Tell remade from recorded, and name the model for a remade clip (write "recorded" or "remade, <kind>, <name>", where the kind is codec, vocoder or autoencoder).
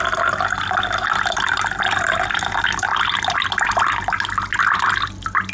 recorded